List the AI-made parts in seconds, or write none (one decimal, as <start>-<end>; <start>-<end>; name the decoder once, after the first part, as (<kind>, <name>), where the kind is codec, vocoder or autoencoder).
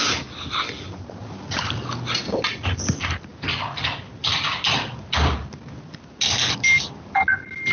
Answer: none